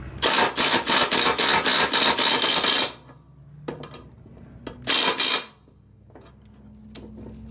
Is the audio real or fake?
real